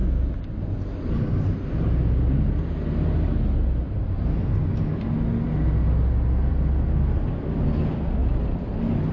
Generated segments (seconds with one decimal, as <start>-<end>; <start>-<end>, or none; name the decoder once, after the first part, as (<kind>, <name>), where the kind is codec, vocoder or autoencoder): none